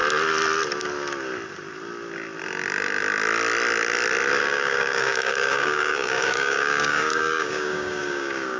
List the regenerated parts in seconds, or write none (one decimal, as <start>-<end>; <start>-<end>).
4.4-8.6